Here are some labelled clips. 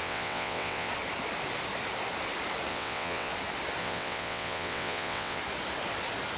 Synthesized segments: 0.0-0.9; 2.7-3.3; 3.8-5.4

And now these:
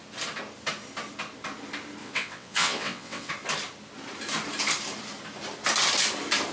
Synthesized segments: 2.0-3.3

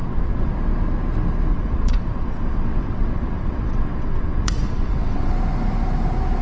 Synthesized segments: 0.0-0.5; 1.5-5.3